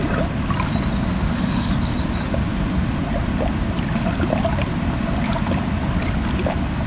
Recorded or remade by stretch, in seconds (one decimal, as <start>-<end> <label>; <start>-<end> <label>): 0.0-1.1 recorded; 1.1-1.7 remade; 1.7-6.9 recorded